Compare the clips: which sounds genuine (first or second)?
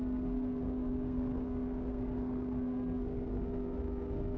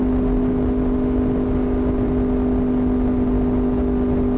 second